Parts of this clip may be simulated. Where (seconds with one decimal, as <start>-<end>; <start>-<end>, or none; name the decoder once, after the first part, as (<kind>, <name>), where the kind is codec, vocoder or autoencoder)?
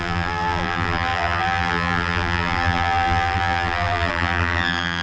0.0-5.0 (vocoder, BigVGAN v2)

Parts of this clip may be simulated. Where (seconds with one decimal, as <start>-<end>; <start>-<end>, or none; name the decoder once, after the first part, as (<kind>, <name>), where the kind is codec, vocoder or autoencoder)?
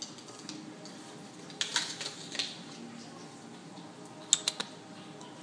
none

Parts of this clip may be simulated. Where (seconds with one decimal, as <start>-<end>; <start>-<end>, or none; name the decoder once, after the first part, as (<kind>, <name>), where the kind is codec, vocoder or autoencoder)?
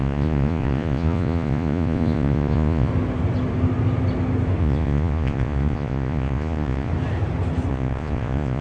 0.0-2.9 (vocoder, Vocos); 4.6-6.9; 7.7-8.6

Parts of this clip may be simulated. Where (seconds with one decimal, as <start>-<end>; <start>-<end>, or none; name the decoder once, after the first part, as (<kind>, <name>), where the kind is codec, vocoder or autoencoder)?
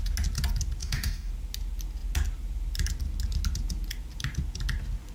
0.8-1.3 (codec, DAC)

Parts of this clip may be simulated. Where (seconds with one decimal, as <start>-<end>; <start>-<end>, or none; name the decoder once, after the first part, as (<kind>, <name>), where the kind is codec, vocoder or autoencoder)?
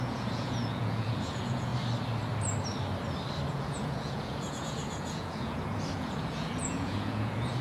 0.0-1.7 (vocoder, Vocos); 3.5-7.6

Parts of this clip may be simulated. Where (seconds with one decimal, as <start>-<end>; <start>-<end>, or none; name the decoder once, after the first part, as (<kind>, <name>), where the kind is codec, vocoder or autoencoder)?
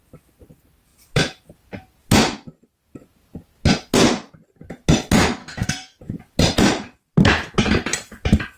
5.4-6.0 (codec, SNAC)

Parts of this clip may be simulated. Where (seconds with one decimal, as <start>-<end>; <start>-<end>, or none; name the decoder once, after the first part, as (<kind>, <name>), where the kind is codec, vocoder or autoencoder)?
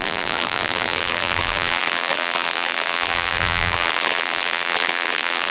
0.0-5.5 (vocoder, BigVGAN v2)